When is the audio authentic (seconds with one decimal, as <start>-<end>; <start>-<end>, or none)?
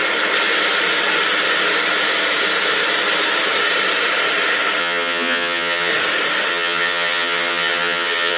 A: 0.0-4.8; 5.9-6.5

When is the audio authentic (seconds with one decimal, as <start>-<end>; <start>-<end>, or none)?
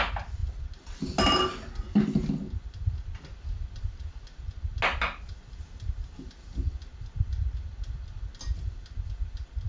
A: 0.0-9.7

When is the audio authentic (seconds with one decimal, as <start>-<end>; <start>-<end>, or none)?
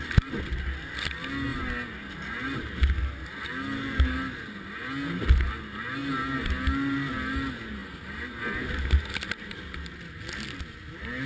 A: 0.0-11.3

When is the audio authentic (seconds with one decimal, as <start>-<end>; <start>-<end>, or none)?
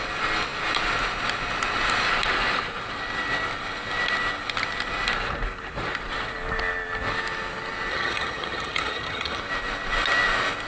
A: 0.0-7.9; 9.4-10.7